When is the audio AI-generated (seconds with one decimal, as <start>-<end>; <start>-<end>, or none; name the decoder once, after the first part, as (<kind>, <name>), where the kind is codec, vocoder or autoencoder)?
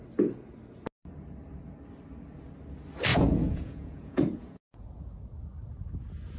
3.1-5.2 (vocoder, Vocos)